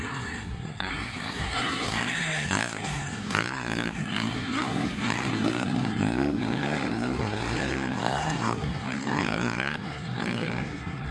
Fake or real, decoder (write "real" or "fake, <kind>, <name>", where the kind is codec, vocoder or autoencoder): fake, codec, SNAC